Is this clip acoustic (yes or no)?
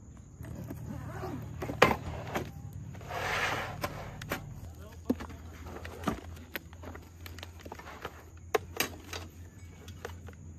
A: yes